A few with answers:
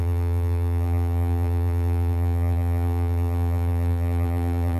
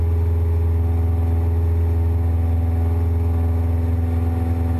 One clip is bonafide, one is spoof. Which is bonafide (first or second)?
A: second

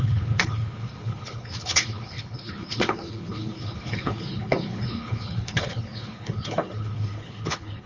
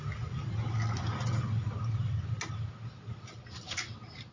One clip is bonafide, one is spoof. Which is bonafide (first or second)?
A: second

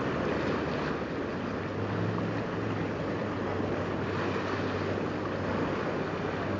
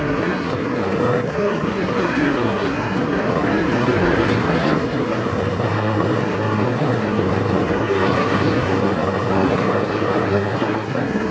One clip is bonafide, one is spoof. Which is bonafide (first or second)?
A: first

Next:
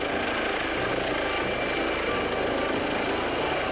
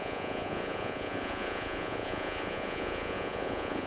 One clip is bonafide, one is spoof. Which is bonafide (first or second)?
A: first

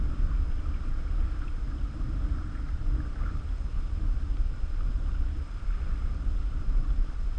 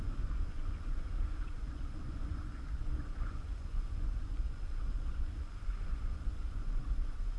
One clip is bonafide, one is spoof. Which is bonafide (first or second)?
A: first